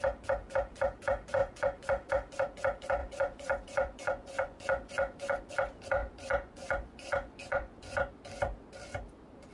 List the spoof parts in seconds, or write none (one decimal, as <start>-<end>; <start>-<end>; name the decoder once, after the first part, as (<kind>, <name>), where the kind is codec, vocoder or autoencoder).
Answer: 1.4-2.1 (vocoder, Vocos); 3.0-5.5; 6.0-8.1